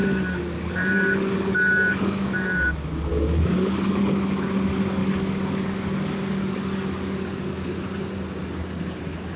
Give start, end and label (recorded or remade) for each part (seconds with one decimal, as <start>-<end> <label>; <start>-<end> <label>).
0.0-2.7 remade; 2.7-3.1 recorded; 3.1-4.0 remade; 4.0-5.0 recorded; 5.0-7.6 remade; 7.6-9.4 recorded